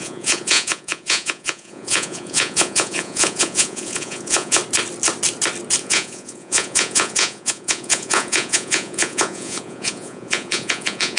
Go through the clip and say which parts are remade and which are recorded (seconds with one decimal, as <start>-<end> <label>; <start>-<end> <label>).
0.0-4.6 remade; 4.6-5.8 recorded; 5.8-11.2 remade